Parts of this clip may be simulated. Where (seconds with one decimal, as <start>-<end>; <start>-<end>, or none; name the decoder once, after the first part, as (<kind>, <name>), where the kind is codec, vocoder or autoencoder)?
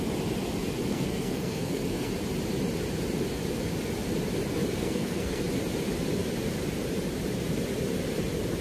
0.9-2.1 (codec, SNAC); 4.8-5.4